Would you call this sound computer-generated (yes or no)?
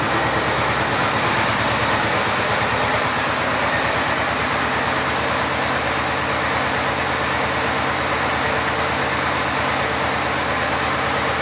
no